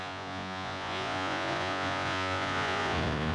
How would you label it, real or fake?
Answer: fake